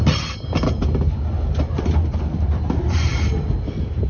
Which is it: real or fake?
real